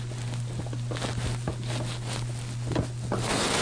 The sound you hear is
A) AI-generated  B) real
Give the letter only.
B